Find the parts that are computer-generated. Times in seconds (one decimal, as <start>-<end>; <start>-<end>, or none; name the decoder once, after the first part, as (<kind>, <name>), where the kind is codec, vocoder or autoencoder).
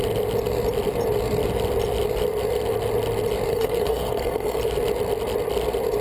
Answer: 3.5-4.6 (codec, SNAC)